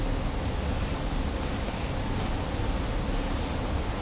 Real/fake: real